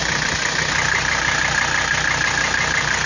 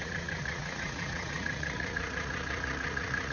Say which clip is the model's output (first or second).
second